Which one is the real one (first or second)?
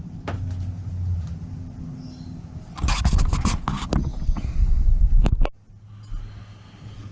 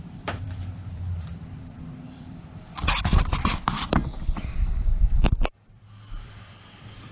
first